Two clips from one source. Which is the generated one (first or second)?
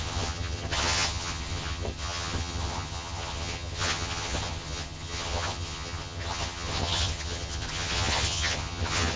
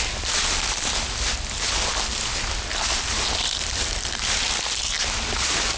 first